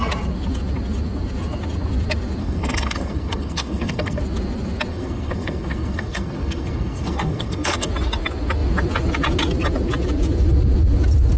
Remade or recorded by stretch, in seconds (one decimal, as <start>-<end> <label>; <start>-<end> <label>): 0.0-2.4 recorded; 2.4-4.2 remade; 4.2-4.9 recorded; 4.9-7.9 remade; 7.9-11.4 recorded